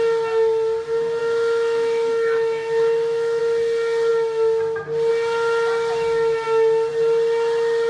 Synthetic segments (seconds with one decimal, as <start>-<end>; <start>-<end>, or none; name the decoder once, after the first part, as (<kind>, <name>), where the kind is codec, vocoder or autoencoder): 1.2-3.4 (autoencoder, DAC-VAE)